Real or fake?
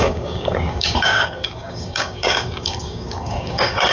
fake